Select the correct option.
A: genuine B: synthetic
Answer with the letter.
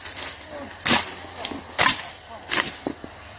A